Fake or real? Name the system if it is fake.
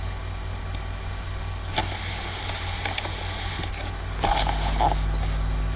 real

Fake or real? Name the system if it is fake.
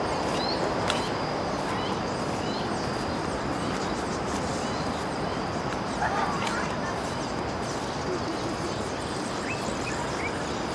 real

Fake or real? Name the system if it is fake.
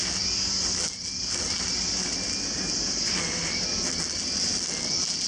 real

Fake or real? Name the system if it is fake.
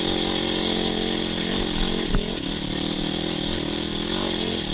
real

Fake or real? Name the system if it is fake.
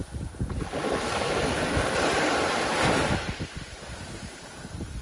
real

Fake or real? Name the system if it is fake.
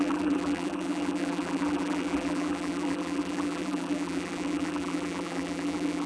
fake, vocoder, BigVGAN v2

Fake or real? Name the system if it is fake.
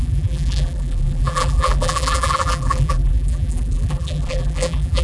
fake, vocoder, BigVGAN v2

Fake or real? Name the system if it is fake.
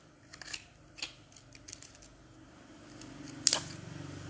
real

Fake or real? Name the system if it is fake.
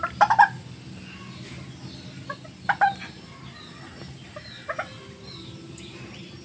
real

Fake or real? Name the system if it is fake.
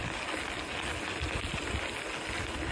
real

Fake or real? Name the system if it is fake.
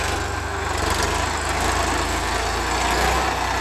real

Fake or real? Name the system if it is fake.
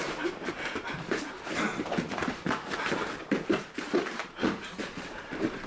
fake, vocoder, BigVGAN v2